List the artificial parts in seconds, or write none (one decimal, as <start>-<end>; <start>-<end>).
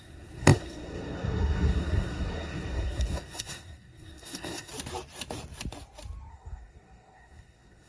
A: 0.0-4.7; 6.3-7.9